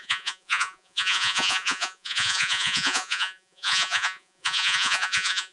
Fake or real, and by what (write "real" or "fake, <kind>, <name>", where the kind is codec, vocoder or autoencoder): fake, vocoder, Vocos